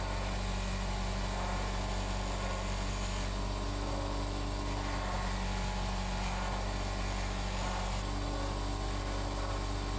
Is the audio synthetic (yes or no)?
no